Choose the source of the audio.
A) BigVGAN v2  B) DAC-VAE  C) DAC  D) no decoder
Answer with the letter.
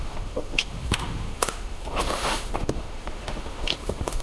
B